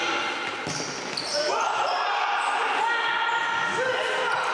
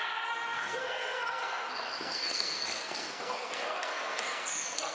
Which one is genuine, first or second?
first